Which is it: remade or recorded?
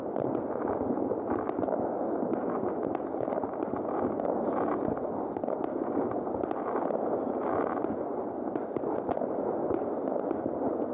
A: recorded